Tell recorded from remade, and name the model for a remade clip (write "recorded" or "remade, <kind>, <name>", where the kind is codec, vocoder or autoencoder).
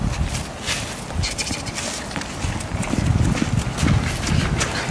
recorded